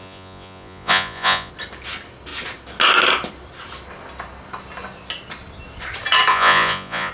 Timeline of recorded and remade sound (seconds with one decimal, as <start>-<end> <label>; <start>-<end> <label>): 0.0-1.5 remade; 1.5-6.3 recorded; 6.3-7.1 remade